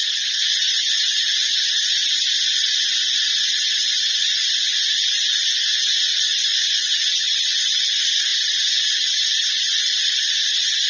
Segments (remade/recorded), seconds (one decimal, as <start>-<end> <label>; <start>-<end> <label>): 0.0-6.5 recorded; 6.5-7.6 remade; 7.6-10.9 recorded